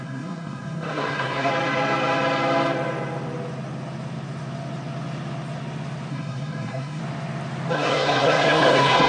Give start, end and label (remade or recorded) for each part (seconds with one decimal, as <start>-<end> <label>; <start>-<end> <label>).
0.0-1.5 remade; 1.5-6.1 recorded; 6.1-7.0 remade; 7.0-7.7 recorded; 7.7-9.1 remade